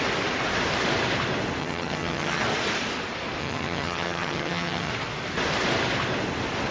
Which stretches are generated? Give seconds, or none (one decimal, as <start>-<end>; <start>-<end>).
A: 1.6-2.4; 3.4-4.9